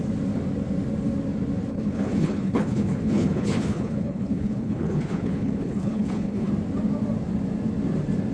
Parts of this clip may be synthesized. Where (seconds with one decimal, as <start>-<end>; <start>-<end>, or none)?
1.7-6.5